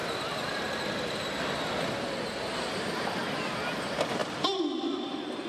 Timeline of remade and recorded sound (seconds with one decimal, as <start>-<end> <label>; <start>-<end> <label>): 0.0-5.5 recorded